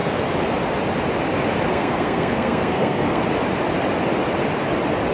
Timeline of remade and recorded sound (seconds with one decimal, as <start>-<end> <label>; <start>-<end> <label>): 0.0-1.7 recorded; 1.7-3.2 remade; 3.2-5.1 recorded